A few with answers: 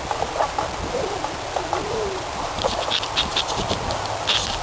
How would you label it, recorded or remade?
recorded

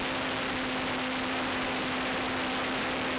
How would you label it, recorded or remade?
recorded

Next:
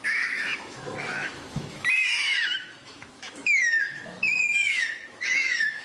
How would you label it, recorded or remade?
remade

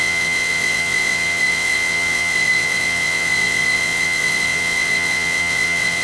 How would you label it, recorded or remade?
remade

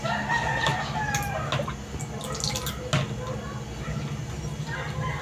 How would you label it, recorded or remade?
recorded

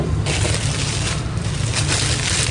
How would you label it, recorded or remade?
recorded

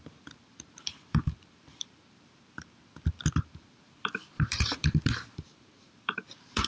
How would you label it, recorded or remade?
remade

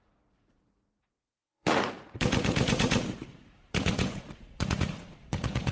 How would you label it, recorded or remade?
remade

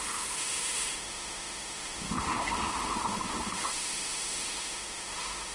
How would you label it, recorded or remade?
remade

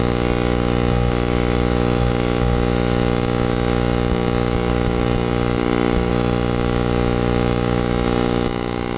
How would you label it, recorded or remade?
remade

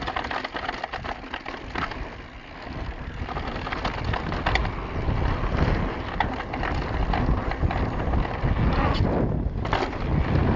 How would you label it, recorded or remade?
recorded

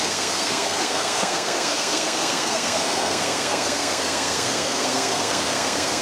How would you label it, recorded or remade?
remade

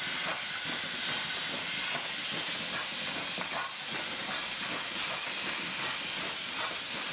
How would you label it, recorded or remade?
recorded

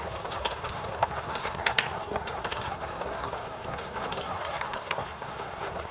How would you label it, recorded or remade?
remade